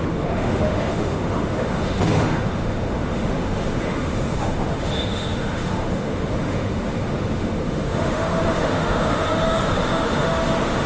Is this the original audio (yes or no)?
no